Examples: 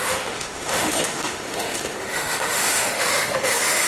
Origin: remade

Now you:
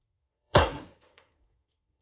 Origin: remade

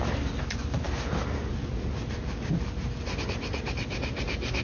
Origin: recorded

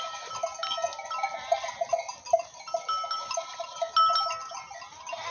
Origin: recorded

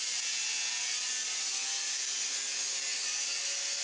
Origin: recorded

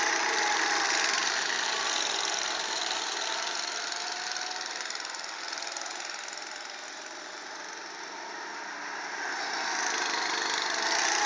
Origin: remade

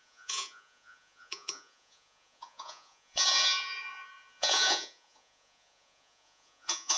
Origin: remade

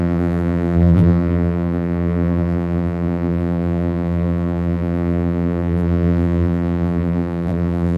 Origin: remade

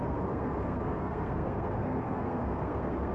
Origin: remade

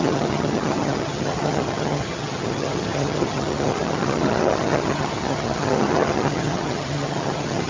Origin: remade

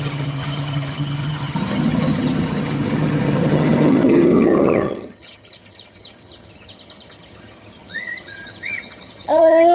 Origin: remade